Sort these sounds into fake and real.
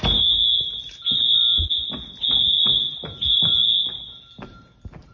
real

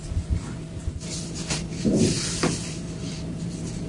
real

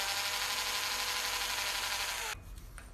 real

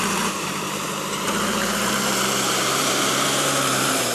fake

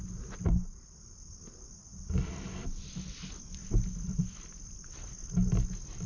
real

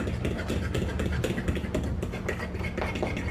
real